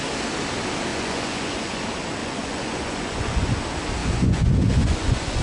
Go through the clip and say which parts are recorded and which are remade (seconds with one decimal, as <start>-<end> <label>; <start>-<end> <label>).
0.0-0.9 recorded; 0.9-1.8 remade; 1.8-2.2 recorded; 2.2-3.6 remade; 3.6-4.0 recorded; 4.0-5.4 remade